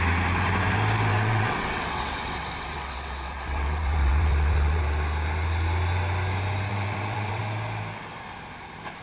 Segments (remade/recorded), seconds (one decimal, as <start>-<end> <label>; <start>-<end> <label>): 0.0-1.1 recorded; 1.1-4.8 remade; 4.8-6.7 recorded; 6.7-7.4 remade; 7.4-9.0 recorded